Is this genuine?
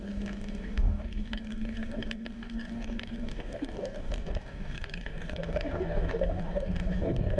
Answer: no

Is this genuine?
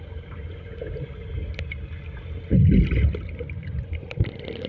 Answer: yes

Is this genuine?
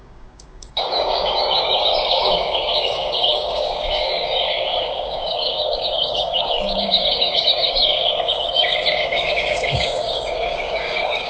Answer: no